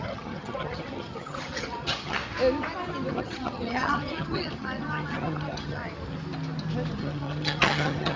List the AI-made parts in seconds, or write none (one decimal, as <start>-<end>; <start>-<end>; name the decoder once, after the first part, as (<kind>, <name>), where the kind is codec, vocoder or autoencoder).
0.0-2.2 (vocoder, HiFi-GAN); 3.1-5.8; 6.9-8.2